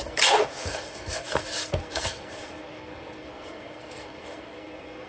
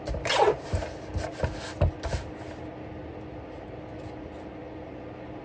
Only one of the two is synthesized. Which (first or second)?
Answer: first